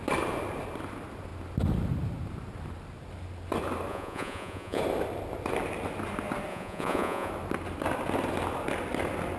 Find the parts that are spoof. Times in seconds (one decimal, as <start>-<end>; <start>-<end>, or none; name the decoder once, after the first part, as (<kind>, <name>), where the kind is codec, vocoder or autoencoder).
3.9-4.8 (vocoder, Vocos); 6.5-7.3